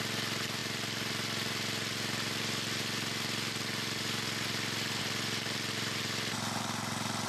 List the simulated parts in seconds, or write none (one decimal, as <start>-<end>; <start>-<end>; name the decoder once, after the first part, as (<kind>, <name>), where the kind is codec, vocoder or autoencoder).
none